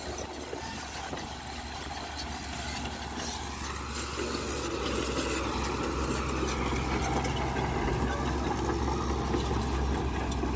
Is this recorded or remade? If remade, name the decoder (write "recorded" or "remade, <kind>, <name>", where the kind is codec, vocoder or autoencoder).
recorded